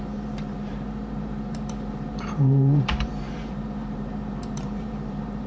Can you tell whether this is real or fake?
fake